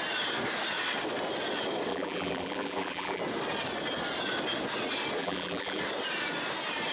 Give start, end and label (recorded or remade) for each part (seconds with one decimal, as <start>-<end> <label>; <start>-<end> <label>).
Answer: 0.0-1.9 recorded; 1.9-3.2 remade; 3.2-5.2 recorded; 5.2-5.8 remade; 5.8-6.9 recorded